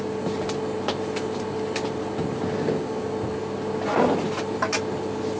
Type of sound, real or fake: real